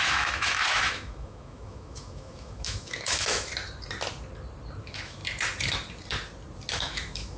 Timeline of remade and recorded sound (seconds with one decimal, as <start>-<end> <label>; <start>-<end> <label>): 0.0-3.5 remade; 3.5-4.8 recorded; 4.8-5.2 remade; 5.2-6.7 recorded; 6.7-7.4 remade